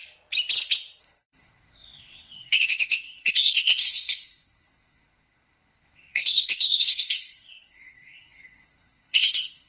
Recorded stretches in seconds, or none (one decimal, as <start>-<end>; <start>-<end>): 0.0-1.0